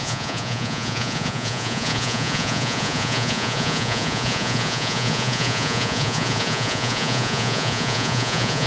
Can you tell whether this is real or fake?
fake